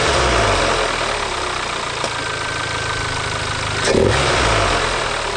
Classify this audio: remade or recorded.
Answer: recorded